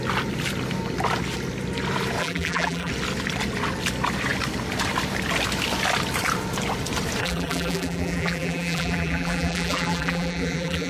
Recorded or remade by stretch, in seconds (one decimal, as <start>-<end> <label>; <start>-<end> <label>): 0.0-2.2 recorded; 2.2-2.9 remade; 2.9-7.2 recorded; 7.2-10.9 remade